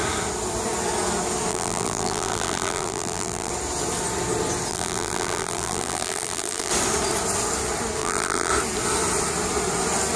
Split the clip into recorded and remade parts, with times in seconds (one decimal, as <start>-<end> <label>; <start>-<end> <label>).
0.0-1.5 recorded; 1.5-3.5 remade; 3.5-4.7 recorded; 4.7-6.7 remade; 6.7-8.0 recorded; 8.0-8.5 remade; 8.5-10.2 recorded